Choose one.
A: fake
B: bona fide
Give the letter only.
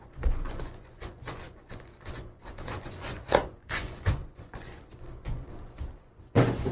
A